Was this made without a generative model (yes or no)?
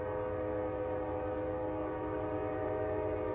yes